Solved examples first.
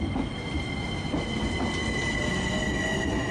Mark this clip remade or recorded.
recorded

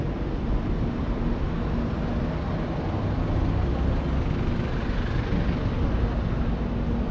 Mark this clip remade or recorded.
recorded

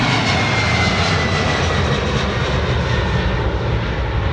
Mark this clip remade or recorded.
recorded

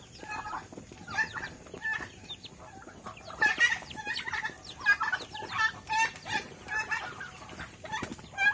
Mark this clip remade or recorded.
recorded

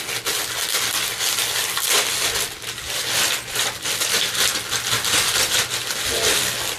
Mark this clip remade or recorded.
recorded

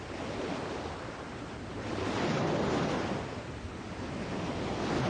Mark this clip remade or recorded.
recorded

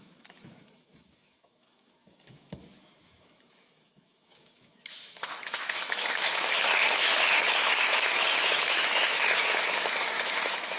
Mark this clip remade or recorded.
remade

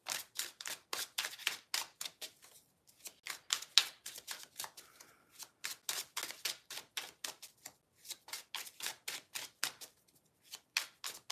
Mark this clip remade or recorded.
recorded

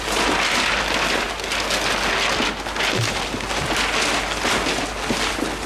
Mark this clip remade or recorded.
recorded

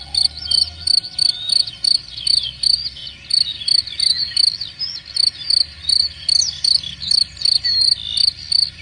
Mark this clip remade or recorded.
recorded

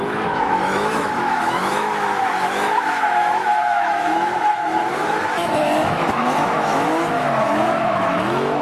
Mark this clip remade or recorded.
remade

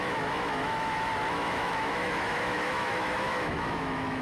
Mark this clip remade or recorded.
remade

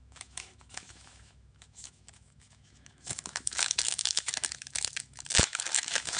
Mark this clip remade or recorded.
remade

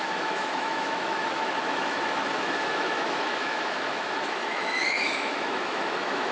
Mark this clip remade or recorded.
remade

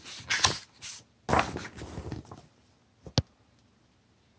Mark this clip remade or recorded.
recorded